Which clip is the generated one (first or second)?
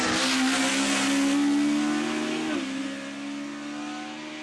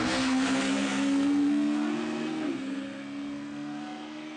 second